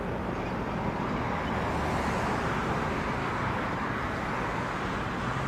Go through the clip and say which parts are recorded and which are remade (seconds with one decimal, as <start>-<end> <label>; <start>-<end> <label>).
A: 0.0-3.2 recorded; 3.2-4.0 remade; 4.0-5.5 recorded